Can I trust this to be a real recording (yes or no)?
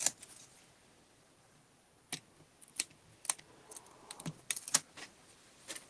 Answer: yes